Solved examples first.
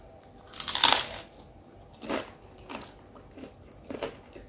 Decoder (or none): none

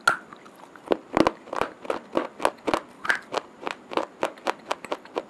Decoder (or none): none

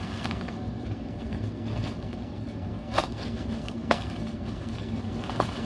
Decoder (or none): codec, SNAC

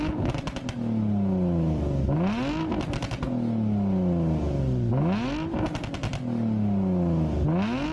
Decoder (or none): none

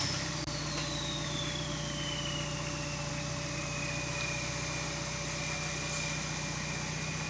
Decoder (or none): none